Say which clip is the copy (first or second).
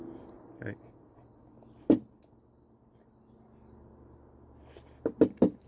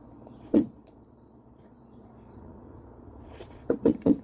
second